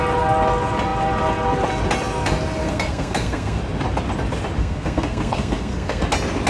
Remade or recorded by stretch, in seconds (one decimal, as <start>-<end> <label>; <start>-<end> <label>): 0.0-2.6 recorded; 2.6-3.6 remade; 3.6-4.6 recorded; 4.6-6.0 remade; 6.0-6.5 recorded